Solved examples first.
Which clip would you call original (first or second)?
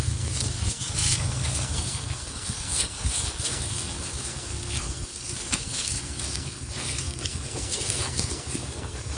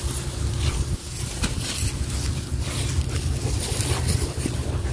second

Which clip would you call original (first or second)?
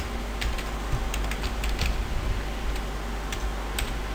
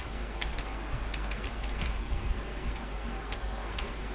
first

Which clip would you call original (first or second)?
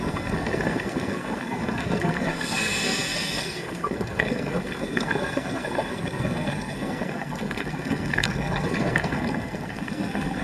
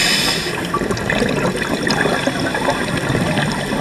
second